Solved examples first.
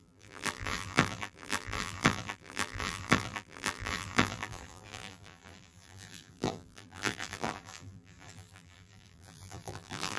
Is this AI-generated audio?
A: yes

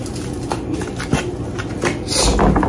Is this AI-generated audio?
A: no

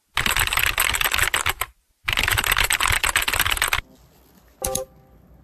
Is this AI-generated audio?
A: no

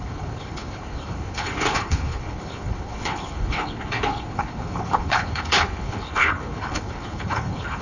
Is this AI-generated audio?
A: yes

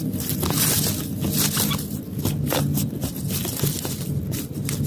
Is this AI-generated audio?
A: no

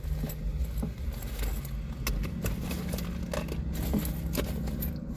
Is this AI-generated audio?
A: no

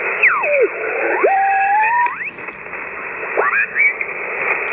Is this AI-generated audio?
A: yes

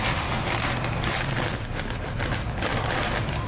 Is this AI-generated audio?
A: no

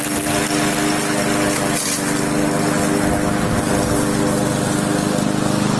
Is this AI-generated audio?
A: no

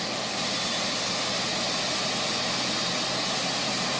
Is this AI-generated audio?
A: no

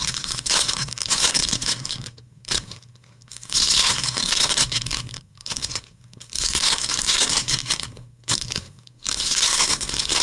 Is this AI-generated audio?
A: yes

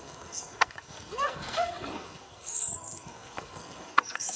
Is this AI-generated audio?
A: yes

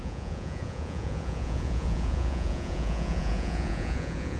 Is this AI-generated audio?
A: yes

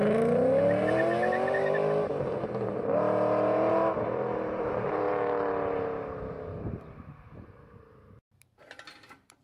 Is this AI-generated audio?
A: yes